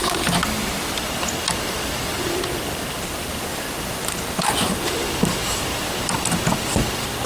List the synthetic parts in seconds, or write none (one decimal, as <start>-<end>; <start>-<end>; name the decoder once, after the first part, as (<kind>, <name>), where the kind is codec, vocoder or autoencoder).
none